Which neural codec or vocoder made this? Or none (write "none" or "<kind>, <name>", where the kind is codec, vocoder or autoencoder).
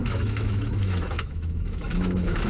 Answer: autoencoder, DAC-VAE